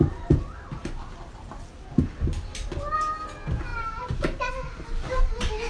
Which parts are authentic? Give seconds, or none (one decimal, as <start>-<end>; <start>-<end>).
0.0-5.7